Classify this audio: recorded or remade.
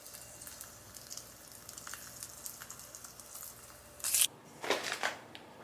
recorded